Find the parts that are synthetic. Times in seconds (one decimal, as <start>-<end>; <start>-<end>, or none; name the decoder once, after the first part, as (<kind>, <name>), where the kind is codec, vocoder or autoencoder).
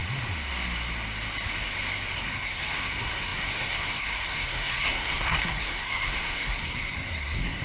2.2-7.6 (codec, SNAC)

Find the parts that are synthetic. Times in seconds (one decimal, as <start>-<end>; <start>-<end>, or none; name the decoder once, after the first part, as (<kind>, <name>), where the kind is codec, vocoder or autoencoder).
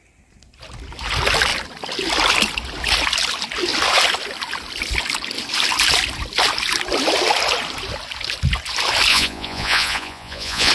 9.1-10.7 (vocoder, Vocos)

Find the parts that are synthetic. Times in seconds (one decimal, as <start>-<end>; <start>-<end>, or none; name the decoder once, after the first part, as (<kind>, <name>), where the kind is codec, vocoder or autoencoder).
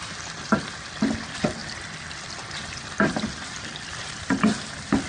1.6-5.1 (vocoder, BigVGAN v2)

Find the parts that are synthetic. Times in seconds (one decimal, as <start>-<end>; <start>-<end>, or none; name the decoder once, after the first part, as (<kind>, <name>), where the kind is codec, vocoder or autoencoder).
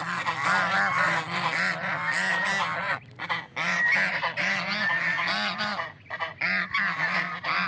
none